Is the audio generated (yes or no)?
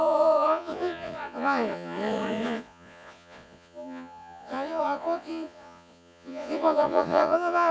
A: yes